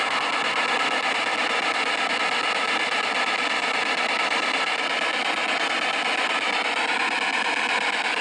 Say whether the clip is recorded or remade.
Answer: recorded